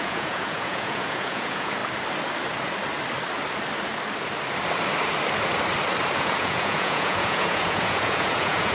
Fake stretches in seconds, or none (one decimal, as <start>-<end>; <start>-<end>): 0.0-1.8; 6.2-8.7